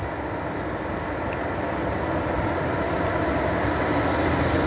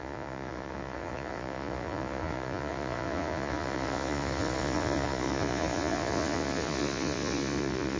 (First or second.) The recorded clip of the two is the first